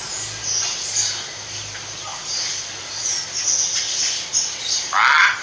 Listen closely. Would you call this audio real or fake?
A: real